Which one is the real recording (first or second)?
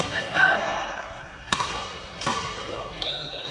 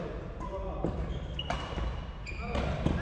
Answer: second